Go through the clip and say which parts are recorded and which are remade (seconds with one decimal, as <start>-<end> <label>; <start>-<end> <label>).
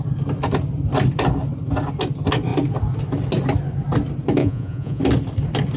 0.0-4.4 recorded; 4.4-5.0 remade; 5.0-5.8 recorded